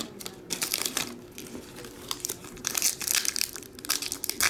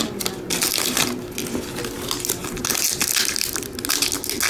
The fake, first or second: first